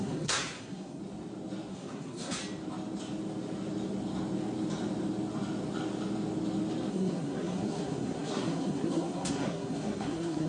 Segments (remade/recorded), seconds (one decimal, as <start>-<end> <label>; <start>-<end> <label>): 0.0-1.0 remade; 1.0-1.7 recorded; 1.7-2.4 remade; 2.4-6.9 recorded; 6.9-10.5 remade